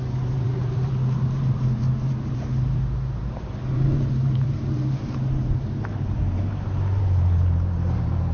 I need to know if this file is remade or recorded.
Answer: remade